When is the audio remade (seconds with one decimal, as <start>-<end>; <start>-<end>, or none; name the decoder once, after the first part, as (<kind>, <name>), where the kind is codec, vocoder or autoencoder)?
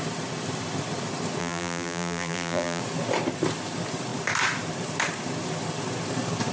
1.4-2.8 (vocoder, BigVGAN v2)